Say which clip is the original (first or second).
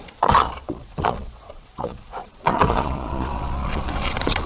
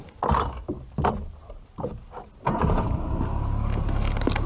second